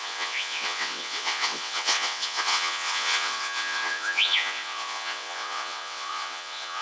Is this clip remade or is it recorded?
remade